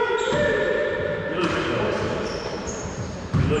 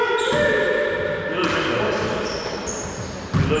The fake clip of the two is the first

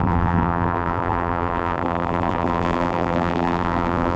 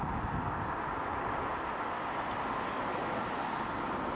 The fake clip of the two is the first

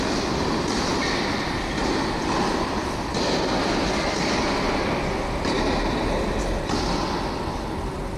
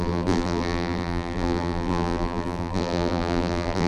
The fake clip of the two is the second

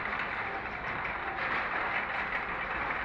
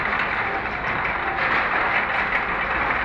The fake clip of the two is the first